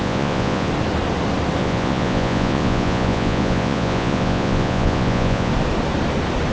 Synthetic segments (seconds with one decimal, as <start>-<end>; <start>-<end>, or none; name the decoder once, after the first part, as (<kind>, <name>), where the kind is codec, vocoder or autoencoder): 0.0-0.7 (vocoder, Vocos); 1.6-5.5